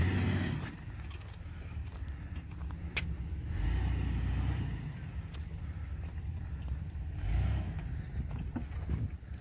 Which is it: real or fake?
real